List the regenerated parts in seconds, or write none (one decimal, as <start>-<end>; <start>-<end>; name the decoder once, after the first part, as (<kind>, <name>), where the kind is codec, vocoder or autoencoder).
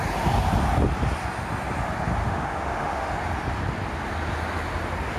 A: 2.2-3.1 (autoencoder, DAC-VAE)